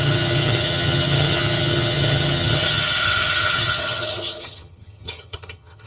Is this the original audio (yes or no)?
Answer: no